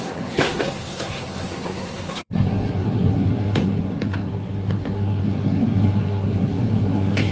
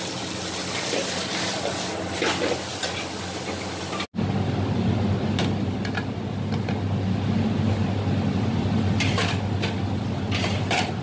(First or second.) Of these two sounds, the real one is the second